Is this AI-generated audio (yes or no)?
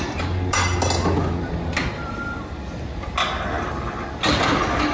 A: no